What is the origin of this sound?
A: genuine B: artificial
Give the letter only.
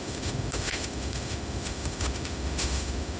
B